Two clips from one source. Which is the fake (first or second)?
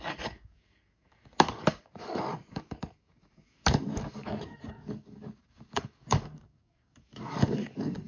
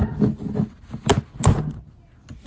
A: first